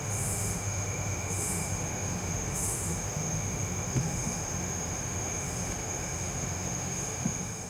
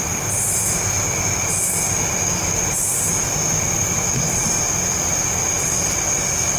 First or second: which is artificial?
first